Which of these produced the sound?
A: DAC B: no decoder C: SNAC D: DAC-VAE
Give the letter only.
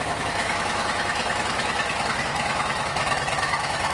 D